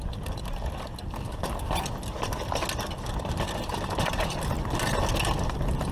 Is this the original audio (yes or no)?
yes